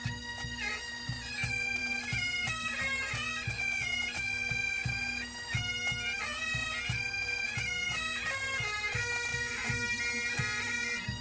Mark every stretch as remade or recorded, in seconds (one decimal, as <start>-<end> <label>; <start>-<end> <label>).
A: 0.0-11.2 recorded